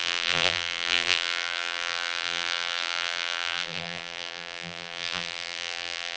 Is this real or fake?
fake